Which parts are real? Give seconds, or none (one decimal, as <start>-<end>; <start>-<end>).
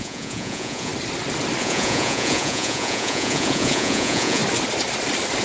0.9-1.6; 4.4-5.4